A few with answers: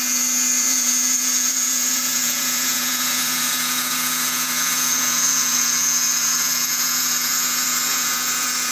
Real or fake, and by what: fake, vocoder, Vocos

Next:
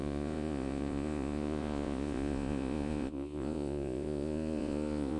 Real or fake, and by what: fake, vocoder, Vocos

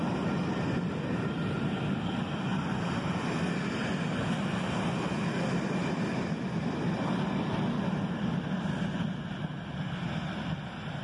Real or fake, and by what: real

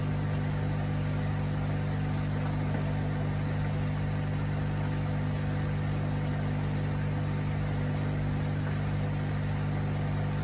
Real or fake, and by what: real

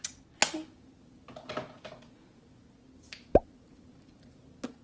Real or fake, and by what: real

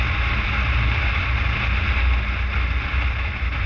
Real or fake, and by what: real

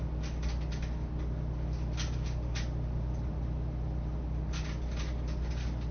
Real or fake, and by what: real